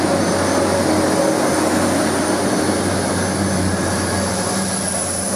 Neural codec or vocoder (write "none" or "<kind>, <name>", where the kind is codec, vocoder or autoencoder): none